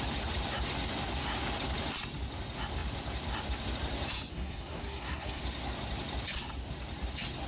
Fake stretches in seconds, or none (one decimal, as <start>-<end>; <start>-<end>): 4.3-5.4